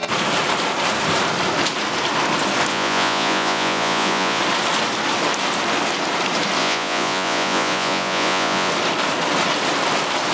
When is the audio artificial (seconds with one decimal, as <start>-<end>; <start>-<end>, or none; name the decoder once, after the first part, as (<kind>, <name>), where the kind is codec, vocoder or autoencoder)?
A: 2.7-4.4 (vocoder, Vocos); 6.6-8.7